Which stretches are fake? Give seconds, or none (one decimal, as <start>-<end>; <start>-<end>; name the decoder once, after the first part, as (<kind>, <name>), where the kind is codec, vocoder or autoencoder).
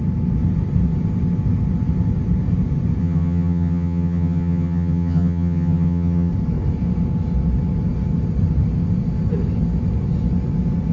3.0-6.3 (vocoder, HiFi-GAN)